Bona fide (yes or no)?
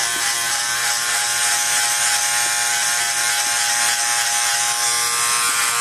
yes